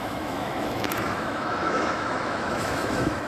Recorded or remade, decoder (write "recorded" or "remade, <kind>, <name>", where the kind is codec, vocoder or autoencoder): remade, autoencoder, DAC-VAE